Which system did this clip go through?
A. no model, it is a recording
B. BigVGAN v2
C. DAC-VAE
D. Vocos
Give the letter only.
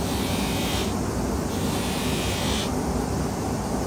A